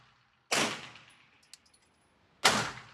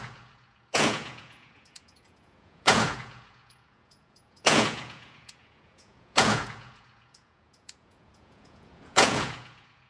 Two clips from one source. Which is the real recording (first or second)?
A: first